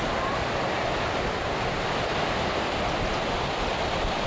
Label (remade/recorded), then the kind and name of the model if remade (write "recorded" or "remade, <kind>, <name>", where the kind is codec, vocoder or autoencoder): recorded